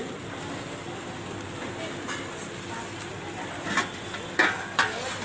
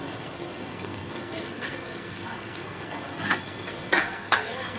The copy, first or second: second